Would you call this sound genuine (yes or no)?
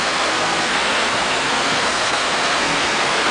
no